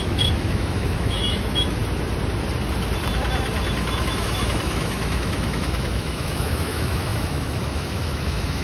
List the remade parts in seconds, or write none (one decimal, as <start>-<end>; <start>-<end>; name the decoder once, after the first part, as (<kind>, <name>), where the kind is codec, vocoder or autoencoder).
0.0-1.8 (autoencoder, DAC-VAE); 4.0-8.6